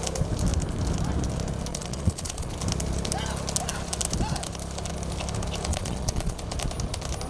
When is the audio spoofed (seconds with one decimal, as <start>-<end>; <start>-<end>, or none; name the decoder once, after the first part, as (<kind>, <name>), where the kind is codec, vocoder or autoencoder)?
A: 1.7-2.5 (vocoder, Vocos); 5.7-6.4